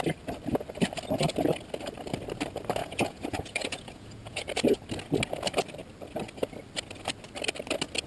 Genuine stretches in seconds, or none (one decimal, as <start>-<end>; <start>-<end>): 0.0-2.8; 4.5-8.1